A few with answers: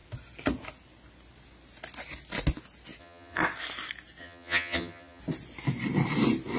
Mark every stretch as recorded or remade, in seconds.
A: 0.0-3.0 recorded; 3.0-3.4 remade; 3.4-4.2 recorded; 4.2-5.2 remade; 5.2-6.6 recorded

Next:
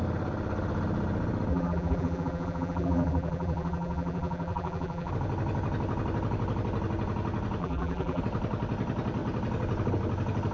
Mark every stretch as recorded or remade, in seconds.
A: 0.0-1.5 recorded; 1.5-5.1 remade; 5.1-7.6 recorded; 7.6-8.2 remade; 8.2-10.5 recorded

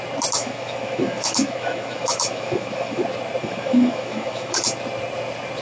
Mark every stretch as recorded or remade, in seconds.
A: 0.0-0.4 recorded; 0.4-3.0 remade; 3.0-3.4 recorded; 3.4-4.6 remade; 4.6-5.6 recorded

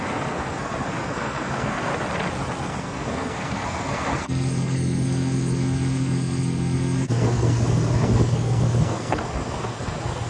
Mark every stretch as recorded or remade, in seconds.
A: 0.0-1.9 remade; 1.9-2.6 recorded; 2.6-10.3 remade

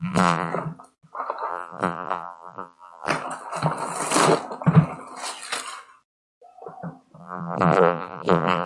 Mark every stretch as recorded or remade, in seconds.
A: 0.0-0.5 remade; 0.5-1.5 recorded; 1.5-3.1 remade; 3.1-7.2 recorded; 7.2-8.7 remade

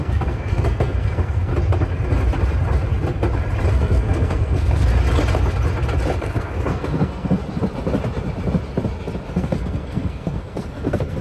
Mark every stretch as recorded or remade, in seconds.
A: 0.0-1.5 remade; 1.5-3.7 recorded; 3.7-4.9 remade; 4.9-6.2 recorded; 6.2-7.4 remade; 7.4-9.3 recorded; 9.3-11.2 remade

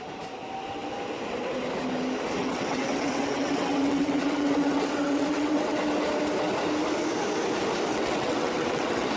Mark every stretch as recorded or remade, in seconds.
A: 0.0-2.4 recorded; 2.4-5.8 remade; 5.8-7.9 recorded; 7.9-9.2 remade